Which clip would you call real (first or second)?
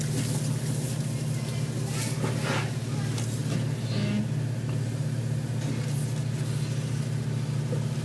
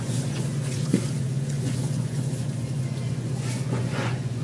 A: first